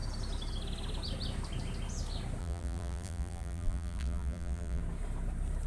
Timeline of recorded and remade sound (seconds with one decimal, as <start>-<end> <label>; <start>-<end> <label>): 0.0-2.4 recorded; 2.4-4.8 remade; 4.8-5.7 recorded